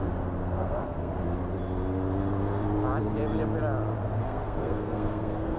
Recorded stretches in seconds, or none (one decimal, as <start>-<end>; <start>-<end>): 0.0-0.4; 1.1-4.2